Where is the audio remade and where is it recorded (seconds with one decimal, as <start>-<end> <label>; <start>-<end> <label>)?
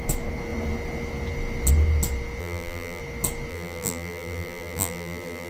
0.0-2.4 recorded; 2.4-3.0 remade; 3.0-3.5 recorded; 3.5-5.5 remade